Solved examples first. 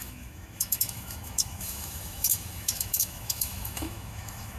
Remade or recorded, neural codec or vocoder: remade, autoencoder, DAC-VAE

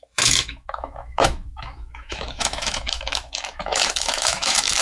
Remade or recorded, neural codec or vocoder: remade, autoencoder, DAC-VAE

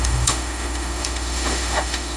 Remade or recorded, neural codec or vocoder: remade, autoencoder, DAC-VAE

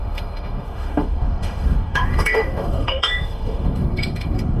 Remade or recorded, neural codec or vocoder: remade, autoencoder, DAC-VAE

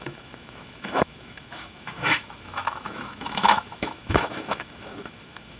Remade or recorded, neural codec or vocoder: remade, autoencoder, DAC-VAE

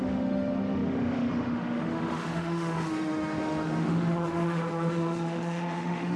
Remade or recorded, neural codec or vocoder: remade, autoencoder, DAC-VAE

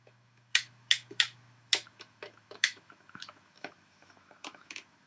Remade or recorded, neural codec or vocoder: remade, autoencoder, DAC-VAE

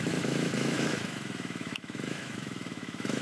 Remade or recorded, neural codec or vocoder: remade, autoencoder, DAC-VAE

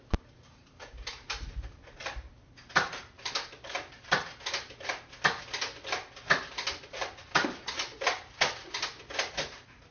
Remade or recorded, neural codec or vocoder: recorded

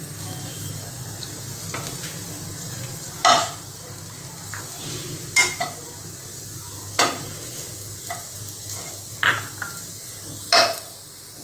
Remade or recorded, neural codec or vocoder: recorded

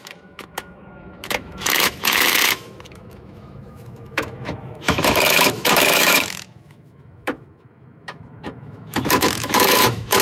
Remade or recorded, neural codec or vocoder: remade, autoencoder, DAC-VAE